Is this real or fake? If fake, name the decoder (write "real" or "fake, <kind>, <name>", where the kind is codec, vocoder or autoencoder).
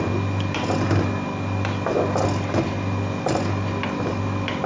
real